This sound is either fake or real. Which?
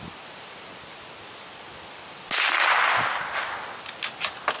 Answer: real